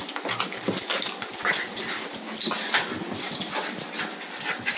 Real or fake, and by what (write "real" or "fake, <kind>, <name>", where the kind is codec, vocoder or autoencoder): real